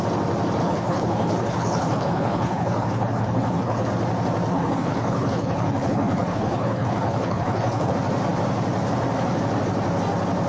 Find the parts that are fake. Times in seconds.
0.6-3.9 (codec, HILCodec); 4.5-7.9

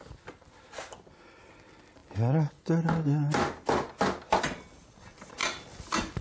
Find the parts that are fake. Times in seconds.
none

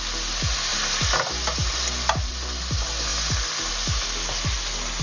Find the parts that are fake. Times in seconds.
none

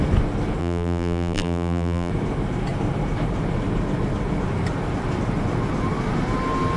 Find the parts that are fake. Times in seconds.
0.6-2.1 (vocoder, BigVGAN v2)